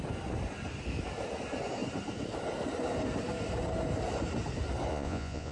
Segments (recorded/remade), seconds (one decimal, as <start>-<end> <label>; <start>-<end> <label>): 0.0-4.9 recorded; 4.9-5.5 remade